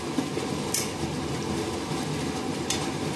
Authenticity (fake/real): real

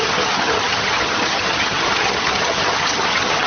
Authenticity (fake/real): fake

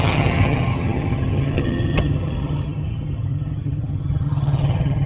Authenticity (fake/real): fake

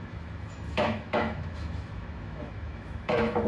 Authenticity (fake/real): fake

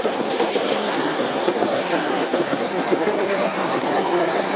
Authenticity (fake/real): fake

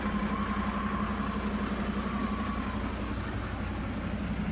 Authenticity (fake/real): real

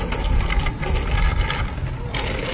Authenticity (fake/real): real